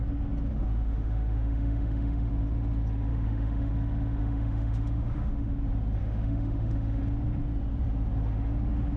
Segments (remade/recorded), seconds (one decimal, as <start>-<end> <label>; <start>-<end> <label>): 0.0-0.5 recorded; 0.5-2.3 remade; 2.3-3.1 recorded; 3.1-3.7 remade; 3.7-4.2 recorded; 4.2-5.5 remade; 5.5-6.0 recorded; 6.0-7.0 remade; 7.0-9.0 recorded